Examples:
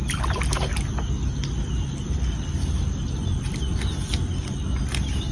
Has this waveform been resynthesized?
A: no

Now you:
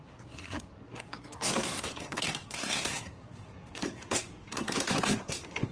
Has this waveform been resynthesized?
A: yes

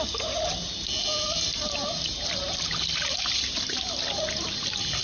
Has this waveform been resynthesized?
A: no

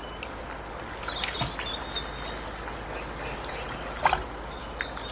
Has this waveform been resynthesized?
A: no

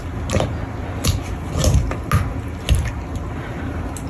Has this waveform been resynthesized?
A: no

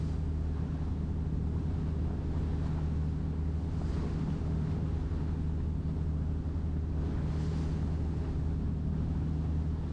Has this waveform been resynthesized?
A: no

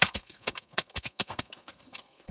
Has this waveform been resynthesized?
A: yes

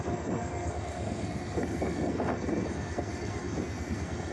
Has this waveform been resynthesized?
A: yes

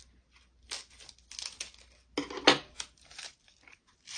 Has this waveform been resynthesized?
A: no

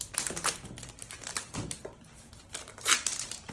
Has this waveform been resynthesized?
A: no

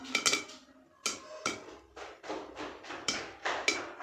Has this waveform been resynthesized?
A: no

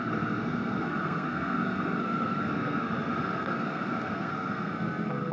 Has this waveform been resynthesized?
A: yes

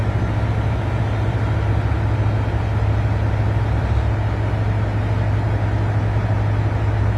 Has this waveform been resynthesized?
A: no